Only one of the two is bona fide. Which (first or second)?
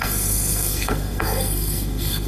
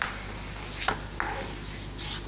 second